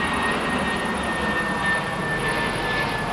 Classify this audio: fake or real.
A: real